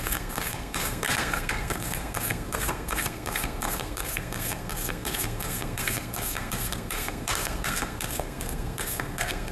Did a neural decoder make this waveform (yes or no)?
yes